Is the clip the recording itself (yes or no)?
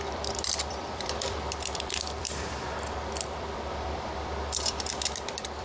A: no